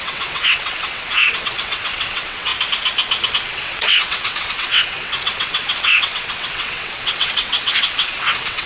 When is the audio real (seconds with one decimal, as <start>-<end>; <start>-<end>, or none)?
2.5-3.3